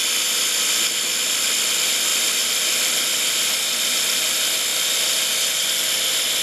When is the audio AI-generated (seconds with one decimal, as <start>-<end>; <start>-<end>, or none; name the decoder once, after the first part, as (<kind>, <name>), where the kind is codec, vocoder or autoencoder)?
none